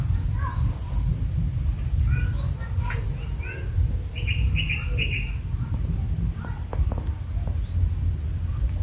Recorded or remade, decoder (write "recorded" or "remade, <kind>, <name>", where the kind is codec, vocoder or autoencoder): recorded